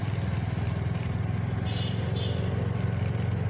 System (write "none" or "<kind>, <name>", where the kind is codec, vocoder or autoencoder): none